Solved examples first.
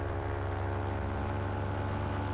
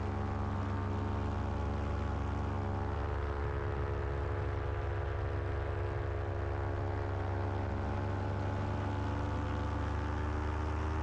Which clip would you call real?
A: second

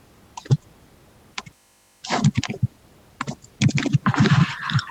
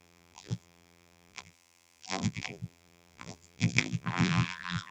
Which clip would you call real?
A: first